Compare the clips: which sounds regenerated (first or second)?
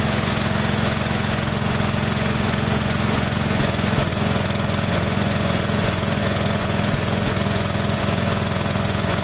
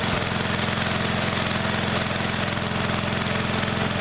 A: first